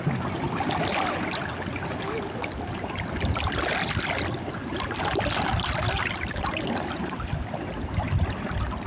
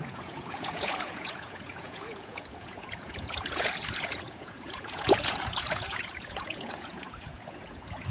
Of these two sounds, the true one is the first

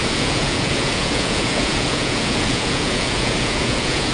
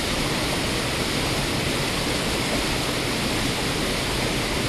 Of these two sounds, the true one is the second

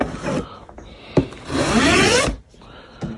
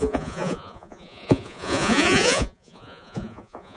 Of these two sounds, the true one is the first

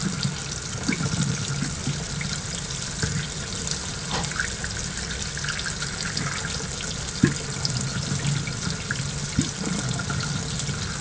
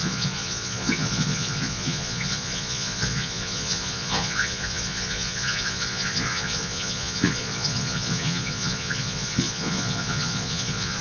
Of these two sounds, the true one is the first